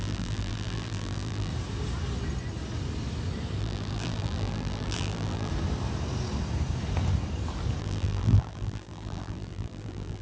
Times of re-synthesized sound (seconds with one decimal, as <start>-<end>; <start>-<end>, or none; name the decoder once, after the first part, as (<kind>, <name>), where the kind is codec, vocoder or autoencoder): 0.0-1.5 (vocoder, BigVGAN v2); 3.6-5.5; 7.8-10.2